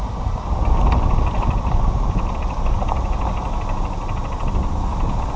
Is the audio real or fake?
real